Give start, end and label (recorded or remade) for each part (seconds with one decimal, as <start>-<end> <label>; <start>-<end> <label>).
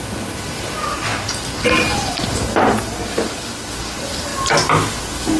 0.0-5.4 recorded